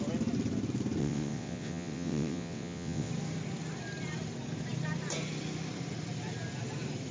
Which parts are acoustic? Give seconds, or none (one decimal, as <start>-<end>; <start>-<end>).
0.0-1.0; 3.1-7.1